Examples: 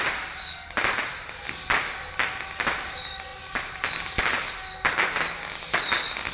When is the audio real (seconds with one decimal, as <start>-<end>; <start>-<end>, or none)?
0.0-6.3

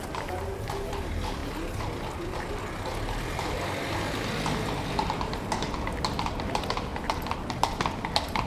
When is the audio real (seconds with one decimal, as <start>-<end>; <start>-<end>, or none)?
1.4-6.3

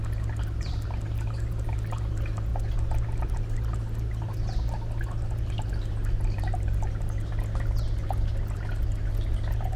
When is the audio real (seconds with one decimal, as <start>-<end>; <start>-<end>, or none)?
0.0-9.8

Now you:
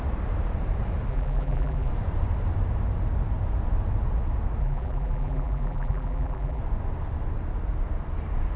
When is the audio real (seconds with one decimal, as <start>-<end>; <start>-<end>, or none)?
0.0-1.1; 1.9-4.6; 6.6-8.6